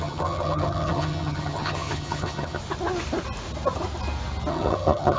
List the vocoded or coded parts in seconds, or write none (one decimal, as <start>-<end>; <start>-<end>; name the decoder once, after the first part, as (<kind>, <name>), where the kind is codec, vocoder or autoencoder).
0.0-2.6 (vocoder, HiFi-GAN); 4.5-5.2